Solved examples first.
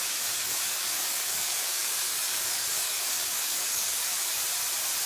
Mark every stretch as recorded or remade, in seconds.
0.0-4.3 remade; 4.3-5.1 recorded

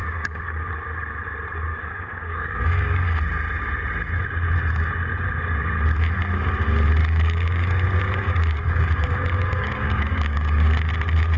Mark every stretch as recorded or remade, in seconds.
0.0-0.7 remade; 0.7-1.7 recorded; 1.7-3.2 remade; 3.2-7.0 recorded; 7.0-10.8 remade; 10.8-11.4 recorded

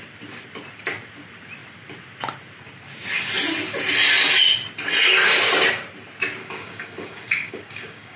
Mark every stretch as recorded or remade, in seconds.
0.0-6.4 recorded; 6.4-8.2 remade

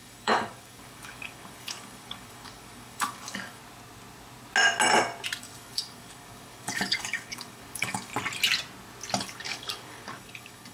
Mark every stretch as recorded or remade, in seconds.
0.0-3.6 remade; 3.6-5.4 recorded; 5.4-8.1 remade; 8.1-9.2 recorded; 9.2-10.7 remade

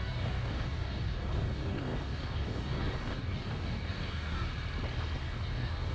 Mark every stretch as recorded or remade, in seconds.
0.0-4.5 remade; 4.5-5.2 recorded; 5.2-5.9 remade

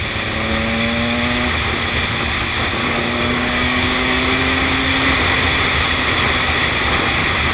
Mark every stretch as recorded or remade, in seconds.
0.0-2.7 recorded; 2.7-4.2 remade; 4.2-7.5 recorded

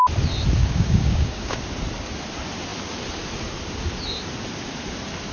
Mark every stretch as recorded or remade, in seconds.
0.0-0.6 recorded; 0.6-1.6 remade; 1.6-5.3 recorded

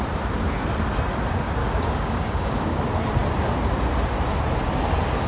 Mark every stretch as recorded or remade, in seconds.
0.0-1.6 recorded; 1.6-2.8 remade; 2.8-5.3 recorded